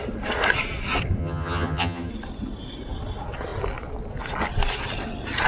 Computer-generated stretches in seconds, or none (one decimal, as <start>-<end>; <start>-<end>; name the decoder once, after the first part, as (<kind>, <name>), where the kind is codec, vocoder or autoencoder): 1.2-2.1 (vocoder, HiFi-GAN)